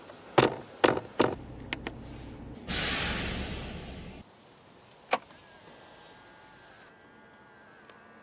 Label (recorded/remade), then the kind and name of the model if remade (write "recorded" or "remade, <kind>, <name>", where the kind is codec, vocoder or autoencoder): recorded